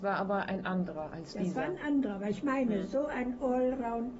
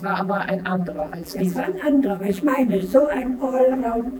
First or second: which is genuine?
first